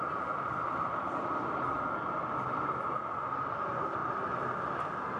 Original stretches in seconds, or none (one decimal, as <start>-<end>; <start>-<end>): 0.0-5.2